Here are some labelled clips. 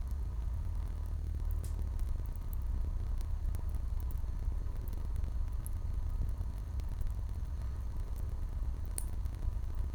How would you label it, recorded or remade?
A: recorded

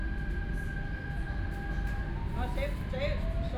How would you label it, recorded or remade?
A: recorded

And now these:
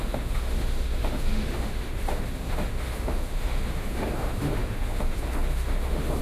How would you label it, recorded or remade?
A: remade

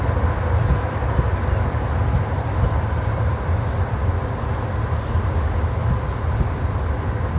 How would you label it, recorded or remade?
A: recorded